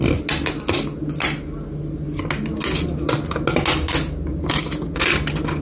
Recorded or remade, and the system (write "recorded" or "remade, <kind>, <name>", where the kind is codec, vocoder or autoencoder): recorded